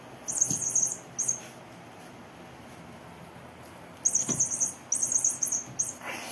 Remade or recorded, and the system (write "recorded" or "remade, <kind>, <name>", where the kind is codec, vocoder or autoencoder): recorded